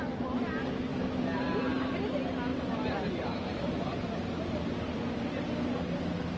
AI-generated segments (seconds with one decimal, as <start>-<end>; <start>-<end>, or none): 0.9-1.9; 2.5-5.0